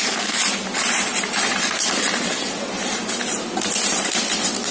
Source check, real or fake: real